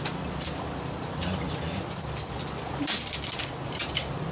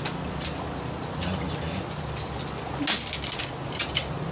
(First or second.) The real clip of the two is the second